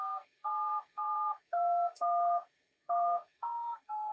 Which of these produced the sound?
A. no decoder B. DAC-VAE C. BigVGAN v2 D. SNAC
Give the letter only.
D